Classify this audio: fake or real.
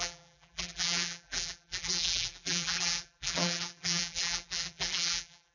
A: fake